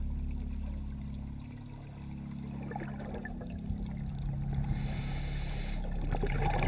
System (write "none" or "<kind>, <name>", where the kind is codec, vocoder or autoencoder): none